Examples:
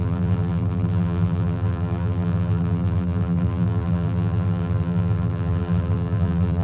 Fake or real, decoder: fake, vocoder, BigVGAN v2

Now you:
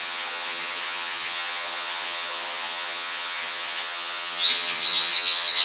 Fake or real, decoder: fake, vocoder, HiFi-GAN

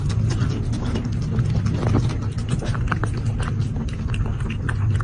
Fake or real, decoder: real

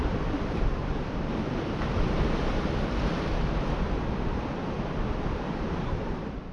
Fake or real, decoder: fake, vocoder, BigVGAN v2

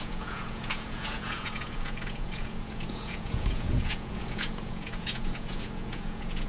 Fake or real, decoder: fake, vocoder, Vocos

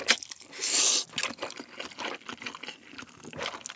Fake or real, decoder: real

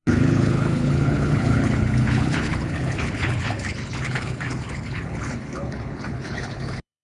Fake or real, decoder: fake, codec, HILCodec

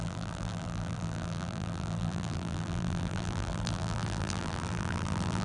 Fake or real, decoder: fake, vocoder, BigVGAN v2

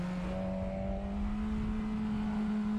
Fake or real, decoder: real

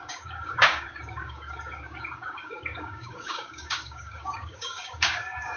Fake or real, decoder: fake, codec, DAC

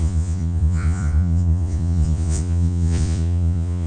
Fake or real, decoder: fake, vocoder, Vocos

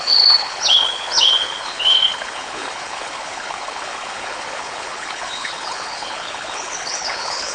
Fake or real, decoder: fake, codec, HILCodec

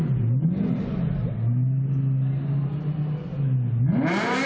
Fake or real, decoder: real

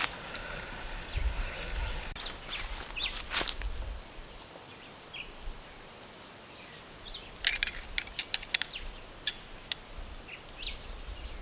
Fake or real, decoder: real